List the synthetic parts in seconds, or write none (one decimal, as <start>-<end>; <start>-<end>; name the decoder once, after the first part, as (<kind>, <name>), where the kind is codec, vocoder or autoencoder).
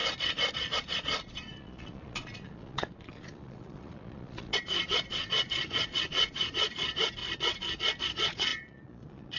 0.5-7.2 (vocoder, Vocos); 8.0-9.4